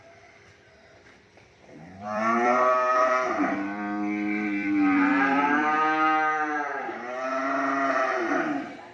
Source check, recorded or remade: remade